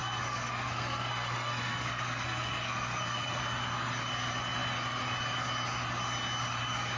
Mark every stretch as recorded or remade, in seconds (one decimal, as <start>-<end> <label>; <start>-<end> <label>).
0.0-3.4 remade; 3.4-7.0 recorded